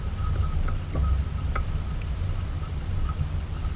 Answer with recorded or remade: recorded